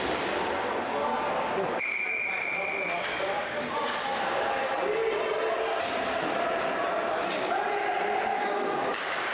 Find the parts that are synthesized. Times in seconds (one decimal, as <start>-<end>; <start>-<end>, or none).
1.0-1.8; 3.1-4.6; 8.3-9.3